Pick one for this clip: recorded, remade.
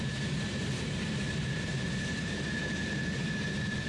remade